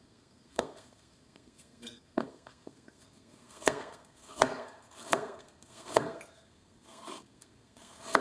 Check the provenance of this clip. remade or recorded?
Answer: remade